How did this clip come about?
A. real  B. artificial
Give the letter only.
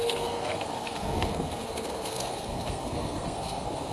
B